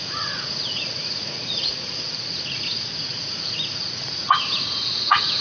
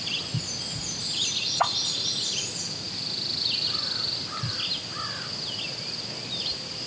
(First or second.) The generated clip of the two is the first